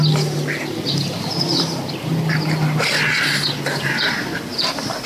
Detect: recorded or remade recorded